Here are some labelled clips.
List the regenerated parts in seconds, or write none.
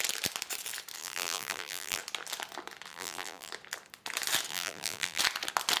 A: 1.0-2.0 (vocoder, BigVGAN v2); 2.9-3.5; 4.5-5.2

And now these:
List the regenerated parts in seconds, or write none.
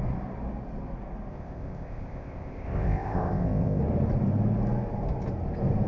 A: 1.3-3.8 (codec, ZipCodec)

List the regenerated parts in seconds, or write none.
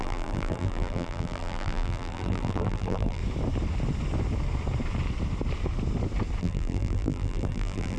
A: 0.0-3.2 (vocoder, BigVGAN v2); 6.4-8.0